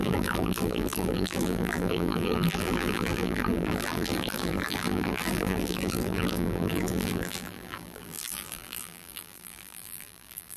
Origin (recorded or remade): remade